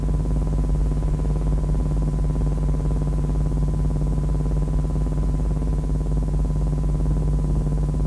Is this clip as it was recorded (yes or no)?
yes